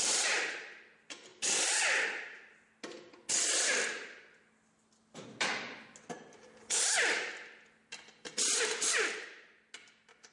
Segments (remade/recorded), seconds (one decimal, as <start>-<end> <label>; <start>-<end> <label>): 0.0-10.3 recorded